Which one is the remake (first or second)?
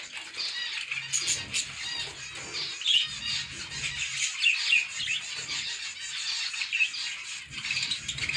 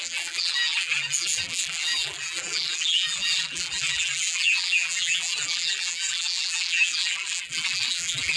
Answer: second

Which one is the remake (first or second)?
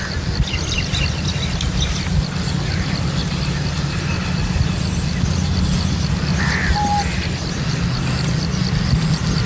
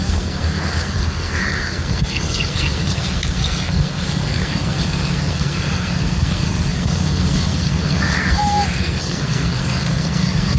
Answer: second